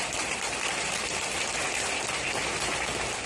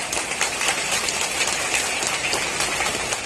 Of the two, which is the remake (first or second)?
second